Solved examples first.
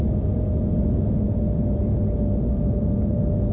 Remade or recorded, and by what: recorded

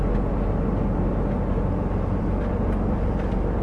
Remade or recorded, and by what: recorded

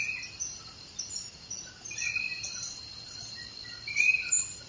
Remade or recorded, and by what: recorded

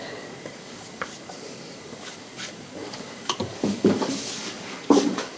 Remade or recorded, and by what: remade, codec, DAC